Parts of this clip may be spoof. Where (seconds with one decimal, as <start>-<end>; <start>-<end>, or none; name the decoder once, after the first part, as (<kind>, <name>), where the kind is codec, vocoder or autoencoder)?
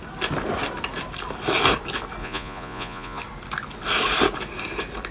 2.2-3.2 (vocoder, Vocos)